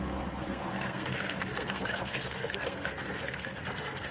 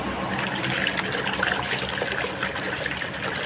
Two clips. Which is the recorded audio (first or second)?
second